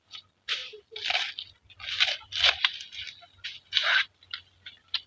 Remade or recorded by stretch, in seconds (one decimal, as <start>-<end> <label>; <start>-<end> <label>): 0.0-5.1 recorded

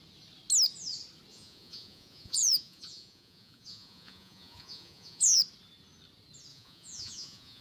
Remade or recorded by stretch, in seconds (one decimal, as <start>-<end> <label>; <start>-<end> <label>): 0.0-1.3 recorded; 1.3-5.4 remade; 5.4-6.5 recorded; 6.5-7.6 remade

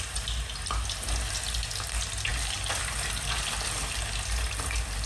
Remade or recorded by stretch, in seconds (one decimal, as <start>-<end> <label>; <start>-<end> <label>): 0.0-5.1 recorded

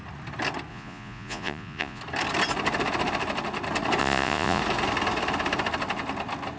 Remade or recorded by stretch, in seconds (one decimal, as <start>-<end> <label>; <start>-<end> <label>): 0.0-0.7 recorded; 0.7-2.0 remade; 2.0-4.0 recorded; 4.0-4.6 remade; 4.6-6.6 recorded

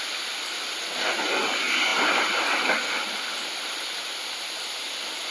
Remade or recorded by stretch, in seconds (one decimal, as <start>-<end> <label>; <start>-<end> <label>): 0.0-5.3 recorded